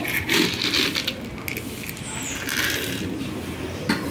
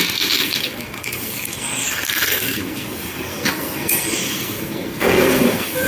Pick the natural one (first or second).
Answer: first